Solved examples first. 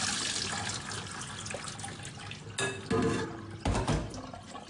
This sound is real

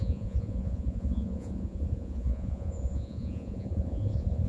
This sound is fake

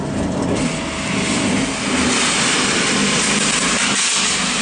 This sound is real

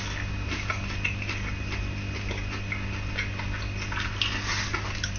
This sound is real